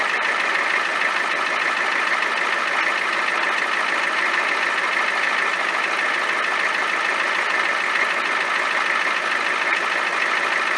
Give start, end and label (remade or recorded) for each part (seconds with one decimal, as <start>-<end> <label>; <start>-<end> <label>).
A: 0.0-10.8 recorded